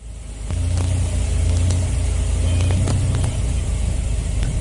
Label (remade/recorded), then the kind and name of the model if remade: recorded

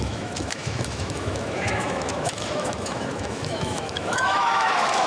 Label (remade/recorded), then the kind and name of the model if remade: remade, autoencoder, DAC-VAE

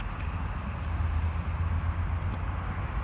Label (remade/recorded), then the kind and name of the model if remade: recorded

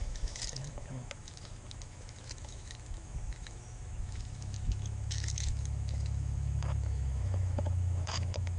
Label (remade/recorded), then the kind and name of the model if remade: remade, autoencoder, DAC-VAE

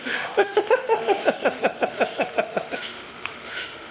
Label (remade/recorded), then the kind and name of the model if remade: remade, autoencoder, DAC-VAE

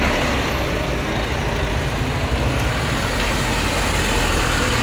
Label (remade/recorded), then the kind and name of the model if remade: recorded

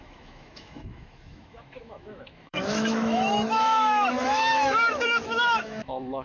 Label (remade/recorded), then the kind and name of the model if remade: remade, autoencoder, DAC-VAE